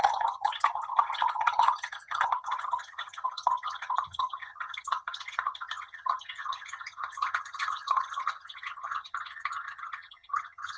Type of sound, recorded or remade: remade